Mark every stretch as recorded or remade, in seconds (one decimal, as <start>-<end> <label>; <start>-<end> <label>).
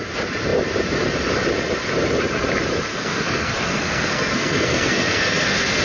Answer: 0.0-2.9 recorded; 2.9-5.8 remade